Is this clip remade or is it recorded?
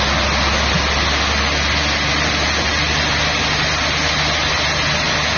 recorded